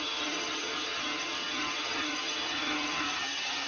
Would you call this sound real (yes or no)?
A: no